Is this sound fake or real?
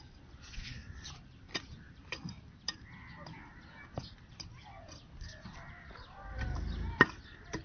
real